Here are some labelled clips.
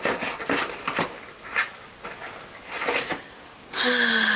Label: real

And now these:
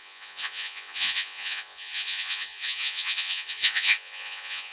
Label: fake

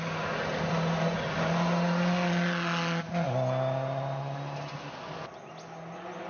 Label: real